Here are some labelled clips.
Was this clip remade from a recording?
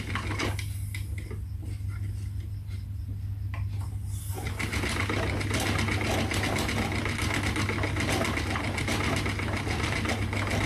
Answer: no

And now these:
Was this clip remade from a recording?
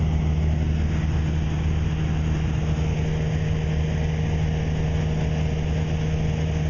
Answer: no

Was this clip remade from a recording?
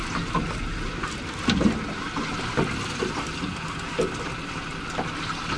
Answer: no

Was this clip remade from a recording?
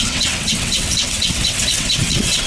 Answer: yes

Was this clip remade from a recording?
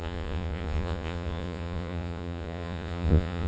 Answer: yes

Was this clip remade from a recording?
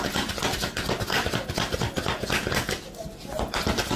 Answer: yes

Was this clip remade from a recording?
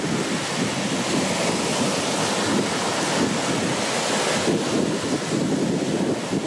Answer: no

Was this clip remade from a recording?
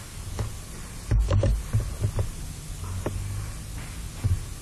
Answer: no